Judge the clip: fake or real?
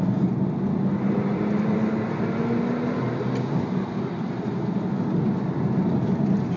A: real